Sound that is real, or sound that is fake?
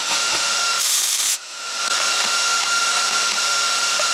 fake